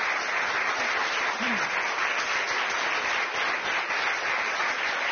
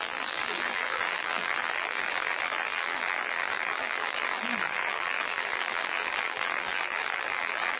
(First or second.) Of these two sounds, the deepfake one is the second